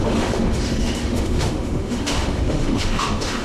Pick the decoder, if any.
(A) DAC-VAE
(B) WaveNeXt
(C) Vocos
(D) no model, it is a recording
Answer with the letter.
A